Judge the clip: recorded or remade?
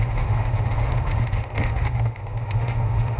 remade